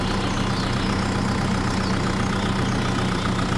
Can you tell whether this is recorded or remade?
recorded